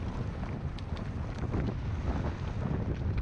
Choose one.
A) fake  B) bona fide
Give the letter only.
B